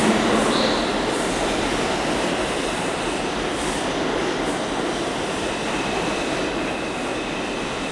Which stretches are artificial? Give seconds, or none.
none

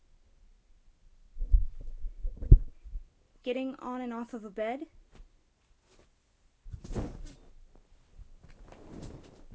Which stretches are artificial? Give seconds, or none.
none

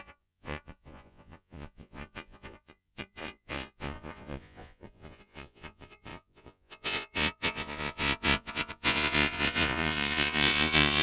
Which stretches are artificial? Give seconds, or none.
0.0-11.0 (vocoder, Vocos)

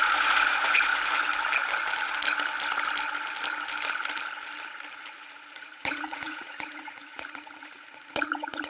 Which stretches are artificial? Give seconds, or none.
0.0-0.9 (vocoder, Vocos); 4.9-8.7

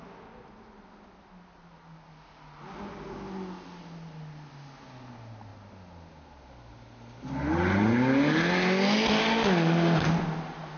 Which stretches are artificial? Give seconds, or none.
none